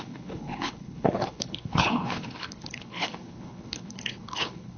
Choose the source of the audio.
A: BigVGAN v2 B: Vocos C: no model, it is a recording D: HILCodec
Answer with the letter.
D